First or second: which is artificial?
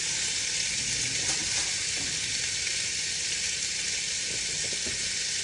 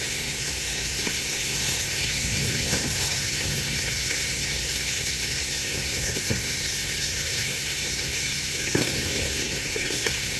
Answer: second